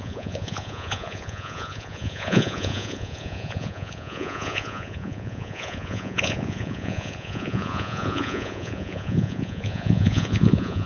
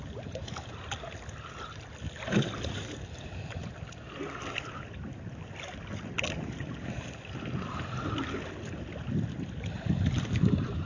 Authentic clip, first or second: second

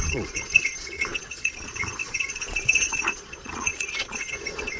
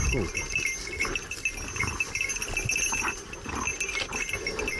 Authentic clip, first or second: second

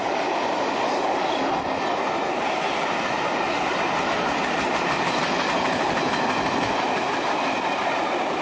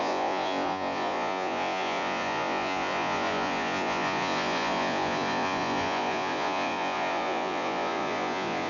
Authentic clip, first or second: first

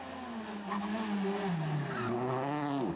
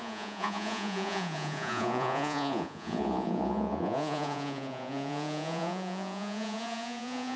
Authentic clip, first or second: first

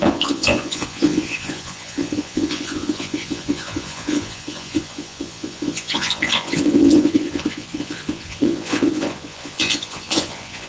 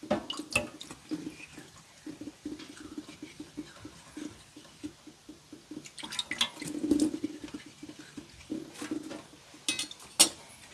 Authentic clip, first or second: second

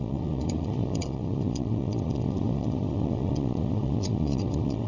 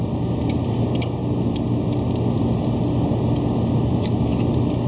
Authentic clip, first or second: second